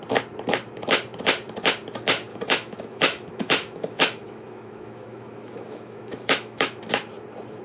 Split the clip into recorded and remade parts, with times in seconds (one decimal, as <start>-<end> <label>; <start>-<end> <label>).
0.0-2.3 recorded; 2.3-6.8 remade; 6.8-7.6 recorded